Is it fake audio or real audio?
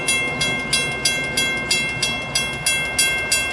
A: real